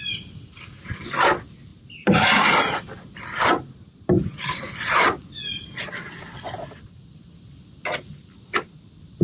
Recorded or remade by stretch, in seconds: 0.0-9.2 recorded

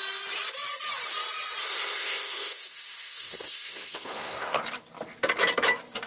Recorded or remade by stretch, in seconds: 0.0-1.6 recorded; 1.6-4.6 remade; 4.6-6.1 recorded

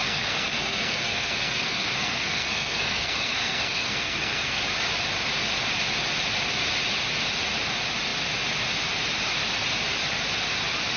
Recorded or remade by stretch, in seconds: 0.0-4.6 remade; 4.6-11.0 recorded

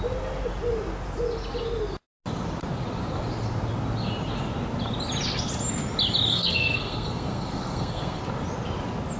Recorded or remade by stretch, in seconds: 0.0-6.3 recorded; 6.3-8.2 remade; 8.2-9.2 recorded

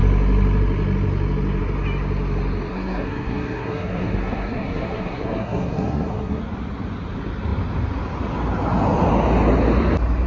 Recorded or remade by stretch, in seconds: 0.0-2.7 recorded; 2.7-6.4 remade; 6.4-10.3 recorded

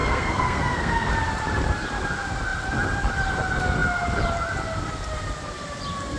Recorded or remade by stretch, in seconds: 0.0-1.1 remade; 1.1-6.2 recorded

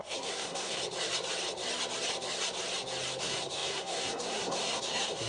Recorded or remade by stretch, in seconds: 0.0-0.8 remade; 0.8-3.2 recorded; 3.2-5.3 remade

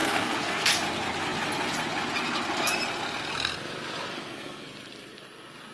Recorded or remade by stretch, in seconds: 0.0-0.7 remade; 0.7-4.1 recorded; 4.1-4.7 remade; 4.7-5.7 recorded